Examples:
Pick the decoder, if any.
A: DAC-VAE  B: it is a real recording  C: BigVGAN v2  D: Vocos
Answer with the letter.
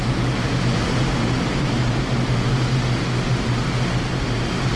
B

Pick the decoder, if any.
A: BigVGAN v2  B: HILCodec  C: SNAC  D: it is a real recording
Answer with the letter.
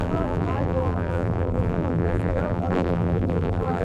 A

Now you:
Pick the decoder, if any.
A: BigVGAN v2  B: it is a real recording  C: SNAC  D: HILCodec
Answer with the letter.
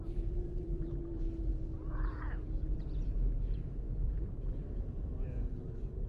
A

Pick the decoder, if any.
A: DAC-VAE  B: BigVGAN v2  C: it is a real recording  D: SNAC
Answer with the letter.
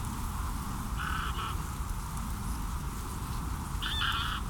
C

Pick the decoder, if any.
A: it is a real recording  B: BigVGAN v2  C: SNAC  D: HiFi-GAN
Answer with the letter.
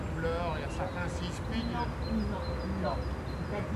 A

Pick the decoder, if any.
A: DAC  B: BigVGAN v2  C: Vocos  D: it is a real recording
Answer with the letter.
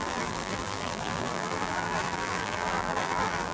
B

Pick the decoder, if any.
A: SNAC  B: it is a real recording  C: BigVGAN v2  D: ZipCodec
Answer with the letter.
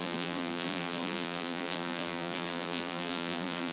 C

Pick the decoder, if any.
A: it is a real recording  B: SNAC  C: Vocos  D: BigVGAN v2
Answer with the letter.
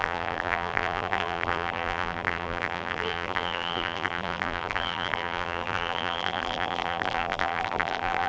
D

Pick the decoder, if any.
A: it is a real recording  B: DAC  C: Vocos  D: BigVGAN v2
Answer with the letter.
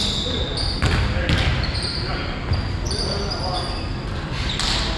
A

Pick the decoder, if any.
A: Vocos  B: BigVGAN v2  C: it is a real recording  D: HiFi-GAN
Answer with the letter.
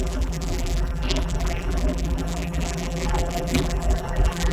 B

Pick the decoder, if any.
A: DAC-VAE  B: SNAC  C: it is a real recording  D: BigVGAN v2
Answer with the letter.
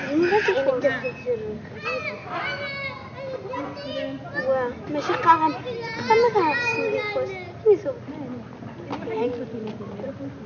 C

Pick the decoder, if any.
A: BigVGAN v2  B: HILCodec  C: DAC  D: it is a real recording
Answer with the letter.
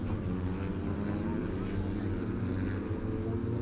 D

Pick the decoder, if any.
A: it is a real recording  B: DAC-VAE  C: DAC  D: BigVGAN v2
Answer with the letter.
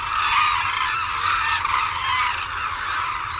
A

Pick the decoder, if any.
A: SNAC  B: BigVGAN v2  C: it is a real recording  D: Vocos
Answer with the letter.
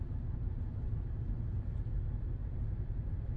B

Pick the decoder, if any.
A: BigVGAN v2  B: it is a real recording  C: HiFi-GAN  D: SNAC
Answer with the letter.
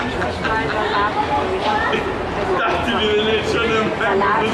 B